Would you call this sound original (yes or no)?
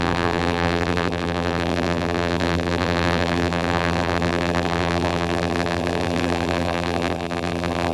no